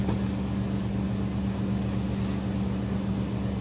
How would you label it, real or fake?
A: real